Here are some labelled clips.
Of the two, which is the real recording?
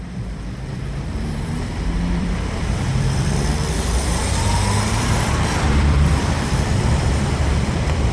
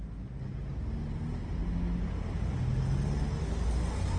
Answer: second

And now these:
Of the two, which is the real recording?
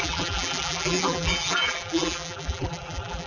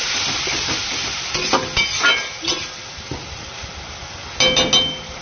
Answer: second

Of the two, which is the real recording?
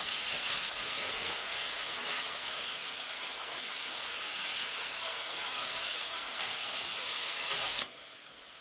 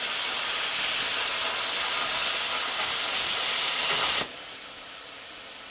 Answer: second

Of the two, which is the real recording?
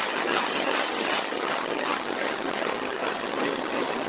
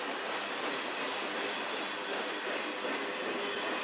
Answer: second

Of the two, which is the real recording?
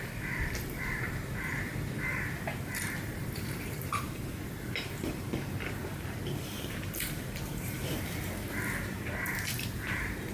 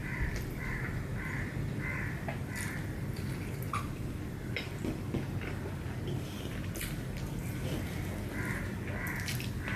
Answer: second